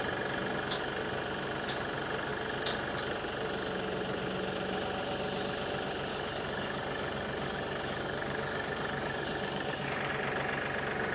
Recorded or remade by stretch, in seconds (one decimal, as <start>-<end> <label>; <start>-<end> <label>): 0.0-6.1 recorded; 6.1-10.1 remade; 10.1-11.1 recorded

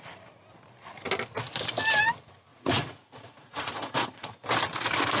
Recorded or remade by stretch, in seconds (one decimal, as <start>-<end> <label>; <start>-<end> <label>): 0.0-2.5 recorded; 2.5-4.3 remade; 4.3-5.2 recorded

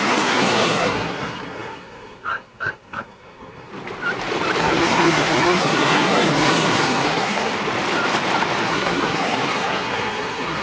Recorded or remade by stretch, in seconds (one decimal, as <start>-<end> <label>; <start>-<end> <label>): 0.0-3.7 remade; 3.7-4.6 recorded; 4.6-7.5 remade; 7.5-8.6 recorded; 8.6-10.6 remade

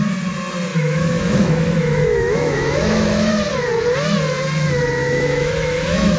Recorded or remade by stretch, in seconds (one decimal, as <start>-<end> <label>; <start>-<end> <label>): 0.0-0.7 recorded; 0.7-3.3 remade; 3.3-5.0 recorded; 5.0-6.2 remade